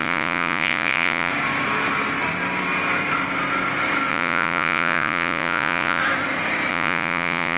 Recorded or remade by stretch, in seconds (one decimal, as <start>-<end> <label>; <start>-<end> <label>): 0.0-1.3 remade; 1.3-4.1 recorded; 4.1-6.0 remade; 6.0-6.7 recorded; 6.7-7.6 remade